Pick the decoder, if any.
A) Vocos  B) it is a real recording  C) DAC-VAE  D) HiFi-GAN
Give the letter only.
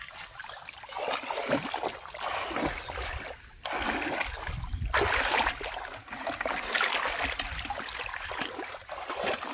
B